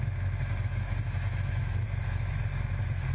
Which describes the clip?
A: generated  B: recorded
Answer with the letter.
A